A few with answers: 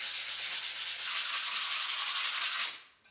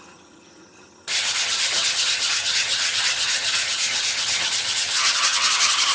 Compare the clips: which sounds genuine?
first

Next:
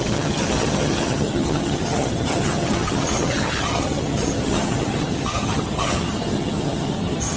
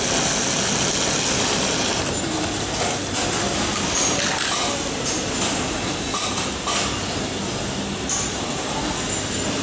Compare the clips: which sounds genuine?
second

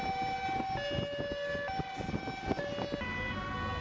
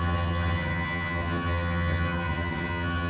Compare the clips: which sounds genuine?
first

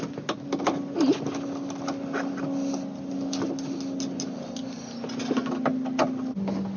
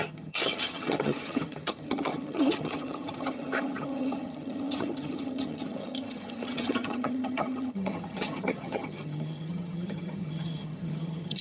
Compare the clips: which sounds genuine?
first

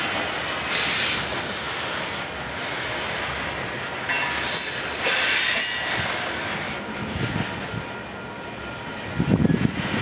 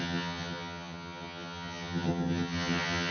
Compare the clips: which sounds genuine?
first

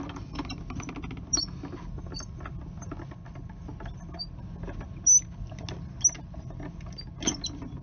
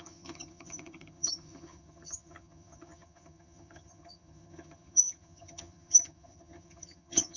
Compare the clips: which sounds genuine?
first